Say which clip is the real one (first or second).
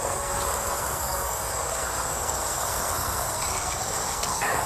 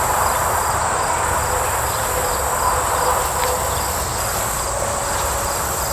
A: second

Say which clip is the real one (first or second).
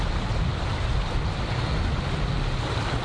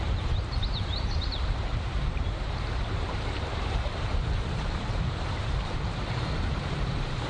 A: first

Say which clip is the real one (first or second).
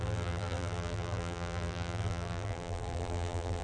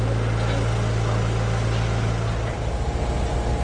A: second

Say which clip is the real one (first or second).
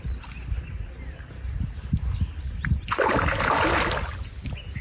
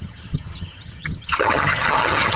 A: first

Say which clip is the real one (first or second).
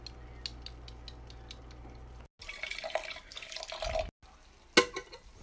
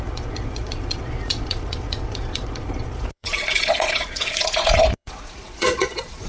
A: first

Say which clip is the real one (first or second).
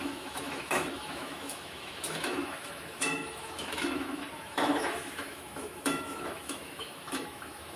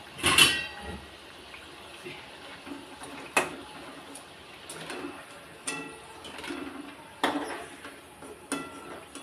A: second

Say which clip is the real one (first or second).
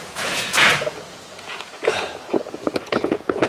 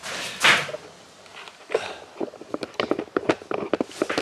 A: second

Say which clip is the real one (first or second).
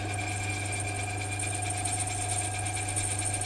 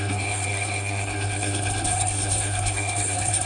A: first